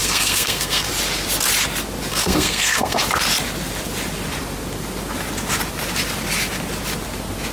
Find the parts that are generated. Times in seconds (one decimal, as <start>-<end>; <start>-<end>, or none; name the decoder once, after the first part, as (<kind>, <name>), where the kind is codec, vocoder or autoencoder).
0.0-0.9 (codec, SNAC); 2.1-3.0